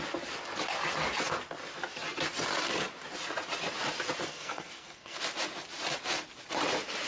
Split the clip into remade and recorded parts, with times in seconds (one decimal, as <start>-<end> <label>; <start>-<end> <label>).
0.0-4.3 recorded; 4.3-5.2 remade; 5.2-7.1 recorded